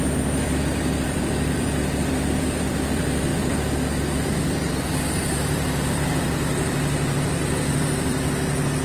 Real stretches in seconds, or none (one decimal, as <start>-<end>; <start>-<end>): none

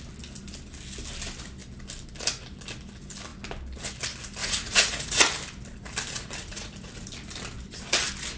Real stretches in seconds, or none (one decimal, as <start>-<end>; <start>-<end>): 0.0-4.4; 5.2-6.4; 7.1-8.4

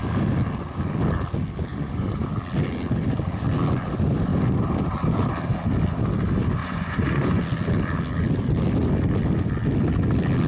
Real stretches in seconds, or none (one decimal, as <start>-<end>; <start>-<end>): 0.0-1.7; 2.3-6.6; 7.4-10.5

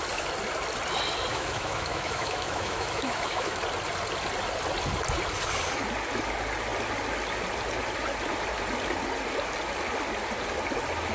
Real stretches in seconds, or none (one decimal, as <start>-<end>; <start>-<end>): 0.0-1.3; 3.6-11.1

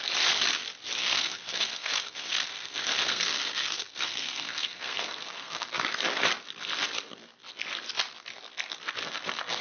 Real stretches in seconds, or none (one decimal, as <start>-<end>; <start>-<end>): 0.0-1.0; 5.7-9.0